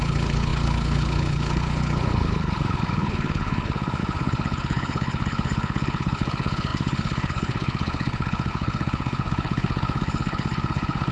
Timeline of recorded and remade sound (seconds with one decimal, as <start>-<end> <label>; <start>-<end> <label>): 0.0-11.1 remade